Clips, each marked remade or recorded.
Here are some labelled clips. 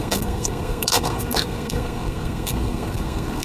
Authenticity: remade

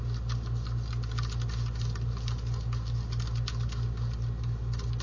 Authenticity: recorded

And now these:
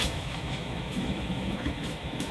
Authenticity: remade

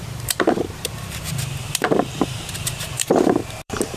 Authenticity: remade